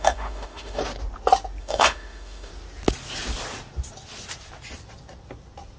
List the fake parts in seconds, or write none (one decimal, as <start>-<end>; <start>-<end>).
0.0-0.8; 1.6-2.5